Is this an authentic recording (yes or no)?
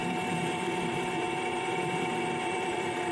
no